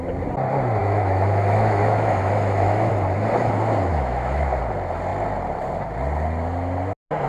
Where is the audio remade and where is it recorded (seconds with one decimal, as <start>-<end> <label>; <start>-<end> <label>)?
0.0-0.8 recorded; 0.8-2.9 remade; 2.9-3.9 recorded; 3.9-4.6 remade; 4.6-7.3 recorded